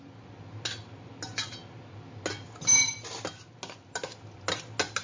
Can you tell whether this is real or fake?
real